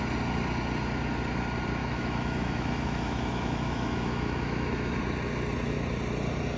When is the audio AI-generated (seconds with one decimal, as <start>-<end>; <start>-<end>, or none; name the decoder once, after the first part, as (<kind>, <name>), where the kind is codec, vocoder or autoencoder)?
1.8-5.0 (autoencoder, DAC-VAE)